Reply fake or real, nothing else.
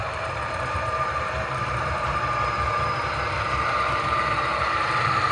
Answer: fake